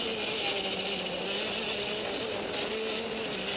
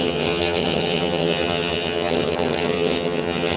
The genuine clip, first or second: first